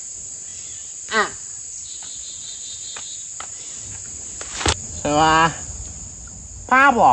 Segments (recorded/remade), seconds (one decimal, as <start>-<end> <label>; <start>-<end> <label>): 0.0-7.1 recorded